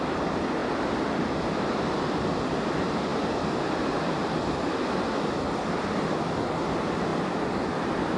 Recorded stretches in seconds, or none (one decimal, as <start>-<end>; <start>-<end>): 0.0-8.2